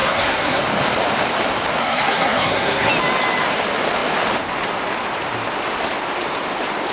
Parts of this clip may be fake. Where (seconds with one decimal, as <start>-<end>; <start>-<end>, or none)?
0.0-0.6; 1.8-2.9